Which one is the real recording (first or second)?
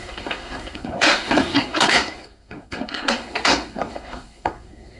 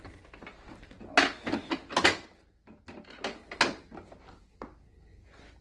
second